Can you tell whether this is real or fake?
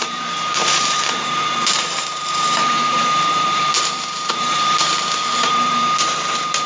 fake